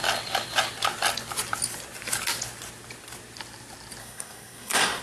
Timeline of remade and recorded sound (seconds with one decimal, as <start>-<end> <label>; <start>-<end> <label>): 0.0-4.0 recorded; 4.0-5.0 remade